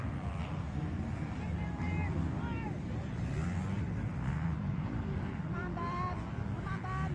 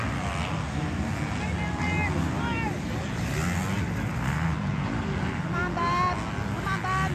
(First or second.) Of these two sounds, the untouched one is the second